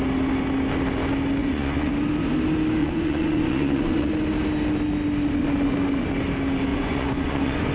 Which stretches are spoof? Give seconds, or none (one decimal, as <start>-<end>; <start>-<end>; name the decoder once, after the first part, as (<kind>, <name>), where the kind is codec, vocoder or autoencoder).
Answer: 1.4-1.9 (vocoder, Vocos); 2.8-4.1; 6.7-7.7